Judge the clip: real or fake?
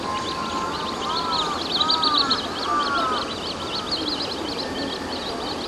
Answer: real